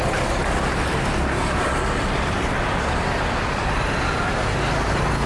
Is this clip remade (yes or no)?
no